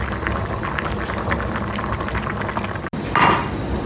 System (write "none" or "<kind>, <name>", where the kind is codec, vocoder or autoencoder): none